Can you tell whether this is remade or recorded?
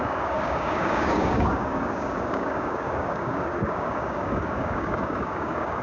remade